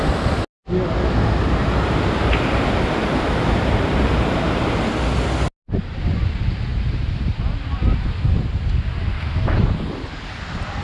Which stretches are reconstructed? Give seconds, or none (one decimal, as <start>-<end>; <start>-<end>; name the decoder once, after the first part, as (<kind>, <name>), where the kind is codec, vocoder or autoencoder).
1.6-4.9 (vocoder, BigVGAN v2); 6.7-8.1